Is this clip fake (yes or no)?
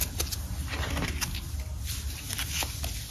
no